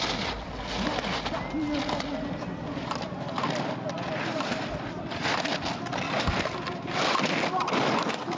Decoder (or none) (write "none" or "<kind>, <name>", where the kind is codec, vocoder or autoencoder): none